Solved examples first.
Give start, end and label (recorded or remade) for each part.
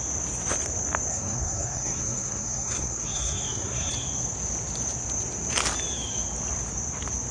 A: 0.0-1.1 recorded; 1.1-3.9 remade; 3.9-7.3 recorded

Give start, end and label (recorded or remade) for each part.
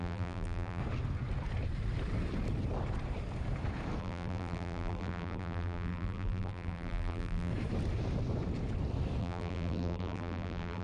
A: 0.0-0.8 remade; 0.8-4.0 recorded; 4.0-7.5 remade; 7.5-9.2 recorded; 9.2-10.8 remade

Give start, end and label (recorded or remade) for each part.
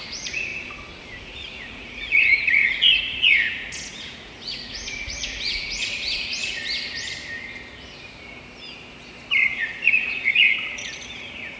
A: 0.0-0.5 remade; 0.5-1.2 recorded; 1.2-6.6 remade; 6.6-9.4 recorded; 9.4-11.6 remade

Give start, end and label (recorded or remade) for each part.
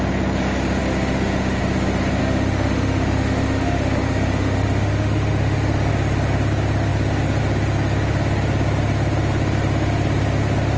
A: 0.0-0.8 recorded; 0.8-1.6 remade; 1.6-2.2 recorded; 2.2-5.9 remade; 5.9-10.8 recorded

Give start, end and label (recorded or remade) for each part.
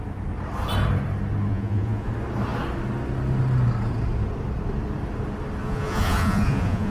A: 0.0-1.5 recorded; 1.5-2.1 remade; 2.1-5.6 recorded; 5.6-6.9 remade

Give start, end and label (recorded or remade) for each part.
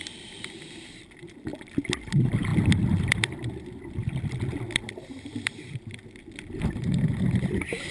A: 0.0-1.5 remade; 1.5-2.1 recorded; 2.1-7.9 remade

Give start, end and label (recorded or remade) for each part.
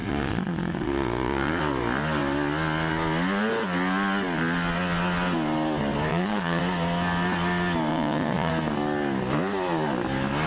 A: 0.0-1.6 remade; 1.6-6.1 recorded; 6.1-6.6 remade; 6.6-7.9 recorded; 7.9-8.5 remade; 8.5-10.5 recorded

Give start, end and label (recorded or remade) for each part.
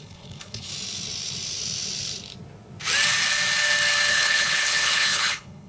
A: 0.0-0.7 remade; 0.7-4.1 recorded; 4.1-5.7 remade